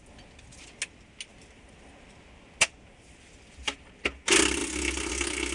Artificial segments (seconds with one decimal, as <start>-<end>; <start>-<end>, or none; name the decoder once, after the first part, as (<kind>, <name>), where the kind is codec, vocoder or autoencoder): none